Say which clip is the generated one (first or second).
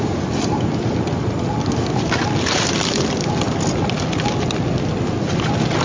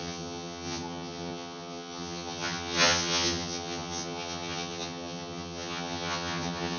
second